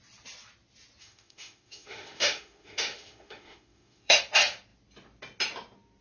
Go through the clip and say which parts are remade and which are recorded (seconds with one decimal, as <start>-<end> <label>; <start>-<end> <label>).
0.0-1.0 recorded; 1.0-4.2 remade; 4.2-6.0 recorded